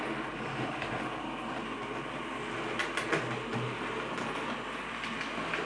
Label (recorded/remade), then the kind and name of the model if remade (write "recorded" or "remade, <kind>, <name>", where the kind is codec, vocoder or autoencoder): recorded